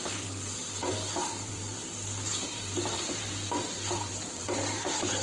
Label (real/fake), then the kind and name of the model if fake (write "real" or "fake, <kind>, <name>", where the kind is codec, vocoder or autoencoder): fake, vocoder, BigVGAN v2